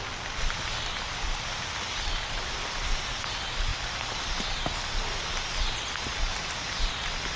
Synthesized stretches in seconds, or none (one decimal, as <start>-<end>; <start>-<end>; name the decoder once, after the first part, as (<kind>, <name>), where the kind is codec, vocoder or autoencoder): none